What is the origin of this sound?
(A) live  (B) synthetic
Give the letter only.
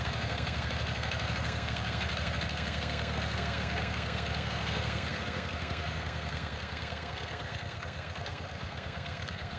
B